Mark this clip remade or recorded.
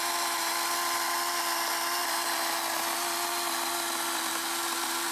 recorded